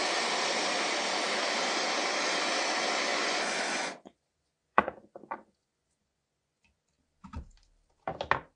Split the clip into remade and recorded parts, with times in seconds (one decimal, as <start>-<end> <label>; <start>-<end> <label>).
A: 0.0-3.1 recorded; 3.1-6.8 remade; 6.8-8.6 recorded